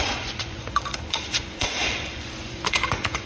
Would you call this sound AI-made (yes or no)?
yes